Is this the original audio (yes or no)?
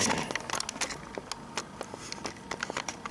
yes